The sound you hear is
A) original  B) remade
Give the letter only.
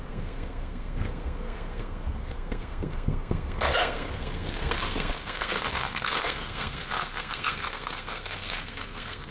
B